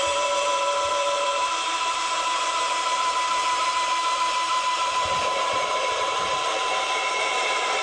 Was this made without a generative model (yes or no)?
no